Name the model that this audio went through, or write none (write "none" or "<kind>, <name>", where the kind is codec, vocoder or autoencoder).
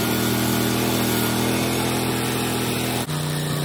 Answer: none